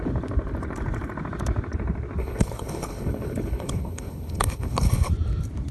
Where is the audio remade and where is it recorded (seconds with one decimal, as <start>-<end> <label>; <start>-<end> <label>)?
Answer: 0.0-2.2 recorded; 2.2-5.1 remade; 5.1-5.7 recorded